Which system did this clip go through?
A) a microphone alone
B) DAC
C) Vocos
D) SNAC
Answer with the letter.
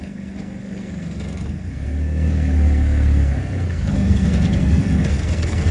D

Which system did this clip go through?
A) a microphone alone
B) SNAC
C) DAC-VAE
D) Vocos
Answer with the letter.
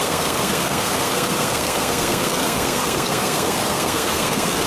B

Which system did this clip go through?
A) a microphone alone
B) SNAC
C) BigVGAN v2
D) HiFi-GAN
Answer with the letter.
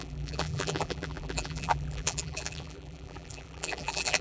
C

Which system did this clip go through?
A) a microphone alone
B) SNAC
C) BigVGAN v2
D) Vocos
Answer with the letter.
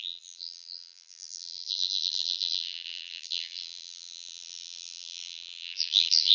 C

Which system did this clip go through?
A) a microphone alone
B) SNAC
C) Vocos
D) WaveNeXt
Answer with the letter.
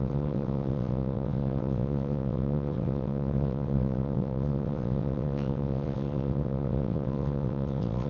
D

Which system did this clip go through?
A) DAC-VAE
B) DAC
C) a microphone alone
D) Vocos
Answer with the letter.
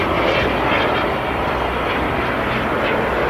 C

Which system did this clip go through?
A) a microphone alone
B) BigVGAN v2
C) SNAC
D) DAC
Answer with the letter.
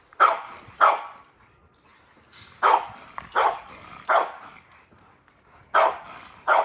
A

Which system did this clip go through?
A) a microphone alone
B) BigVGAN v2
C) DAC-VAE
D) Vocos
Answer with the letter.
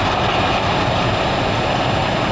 A